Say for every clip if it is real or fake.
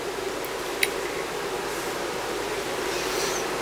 real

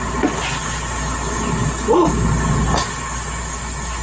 real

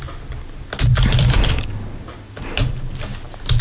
real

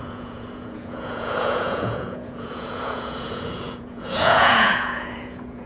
fake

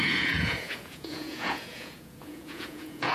fake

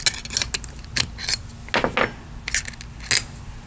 real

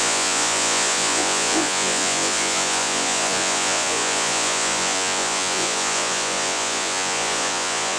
fake